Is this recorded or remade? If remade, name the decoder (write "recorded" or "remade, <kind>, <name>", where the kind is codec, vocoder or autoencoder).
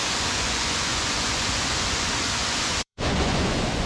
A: remade, vocoder, Vocos